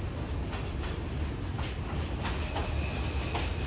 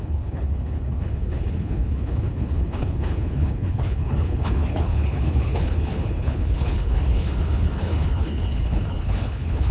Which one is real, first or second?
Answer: first